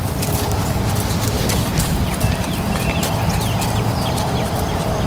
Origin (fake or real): real